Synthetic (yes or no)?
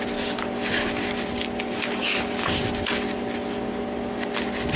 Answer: no